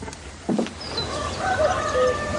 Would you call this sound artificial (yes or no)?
no